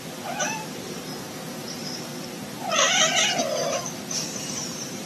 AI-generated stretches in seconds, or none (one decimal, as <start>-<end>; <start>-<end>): 0.0-1.1; 1.7-2.1; 4.4-5.1